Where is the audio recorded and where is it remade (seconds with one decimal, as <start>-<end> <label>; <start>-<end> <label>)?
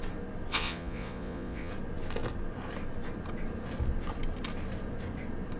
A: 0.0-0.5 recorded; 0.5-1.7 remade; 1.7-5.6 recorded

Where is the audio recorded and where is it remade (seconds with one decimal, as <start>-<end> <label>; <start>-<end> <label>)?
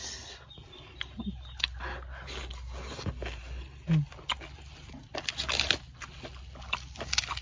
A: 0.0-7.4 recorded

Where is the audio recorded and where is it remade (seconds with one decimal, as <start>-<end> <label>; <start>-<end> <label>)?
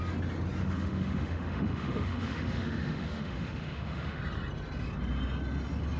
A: 0.0-0.6 recorded; 0.6-4.2 remade; 4.2-6.0 recorded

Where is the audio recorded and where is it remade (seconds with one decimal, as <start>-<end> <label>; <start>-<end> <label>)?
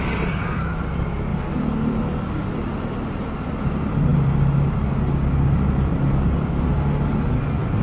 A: 0.0-7.8 recorded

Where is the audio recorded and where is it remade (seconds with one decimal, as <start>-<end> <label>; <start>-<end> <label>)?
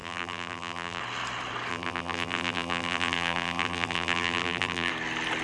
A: 0.0-1.0 remade; 1.0-1.7 recorded; 1.7-4.9 remade; 4.9-5.4 recorded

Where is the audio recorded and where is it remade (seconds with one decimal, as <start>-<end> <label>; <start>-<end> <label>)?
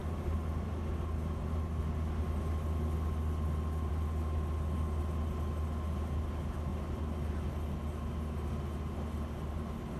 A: 0.0-10.0 recorded